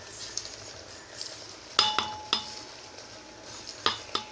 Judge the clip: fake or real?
real